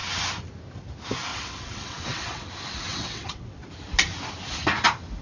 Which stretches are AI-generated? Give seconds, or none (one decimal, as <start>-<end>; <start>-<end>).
1.3-2.5; 2.9-3.7